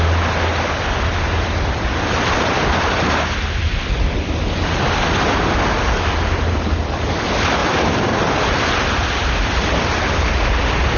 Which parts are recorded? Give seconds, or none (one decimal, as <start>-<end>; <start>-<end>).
0.0-11.0